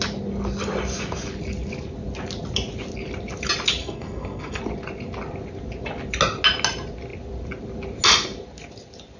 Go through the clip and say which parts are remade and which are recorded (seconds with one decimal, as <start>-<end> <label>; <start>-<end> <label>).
0.0-3.8 recorded; 3.8-4.6 remade; 4.6-9.2 recorded